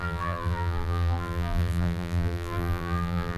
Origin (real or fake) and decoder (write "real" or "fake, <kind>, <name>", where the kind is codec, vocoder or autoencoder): fake, vocoder, BigVGAN v2